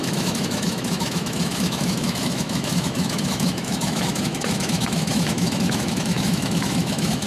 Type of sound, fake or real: fake